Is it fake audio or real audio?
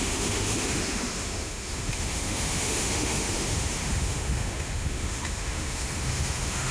fake